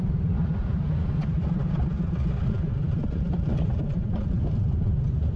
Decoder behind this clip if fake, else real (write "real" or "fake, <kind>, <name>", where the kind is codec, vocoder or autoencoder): real